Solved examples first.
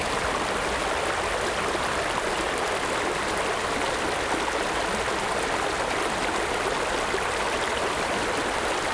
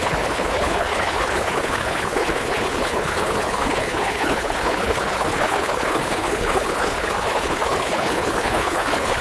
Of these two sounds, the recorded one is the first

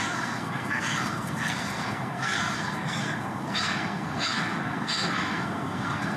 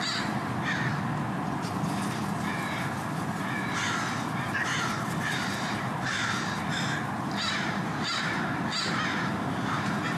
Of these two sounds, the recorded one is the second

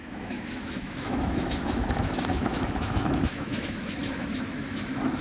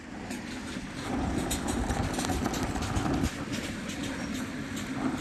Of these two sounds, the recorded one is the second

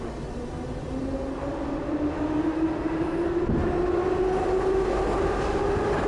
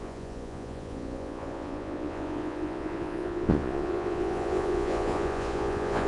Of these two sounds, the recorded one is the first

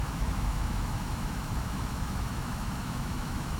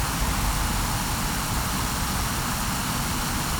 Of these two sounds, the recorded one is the second